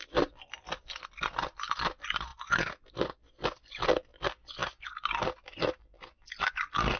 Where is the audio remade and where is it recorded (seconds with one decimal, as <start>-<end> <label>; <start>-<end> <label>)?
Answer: 0.0-7.0 recorded